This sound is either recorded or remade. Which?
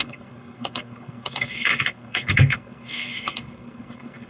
remade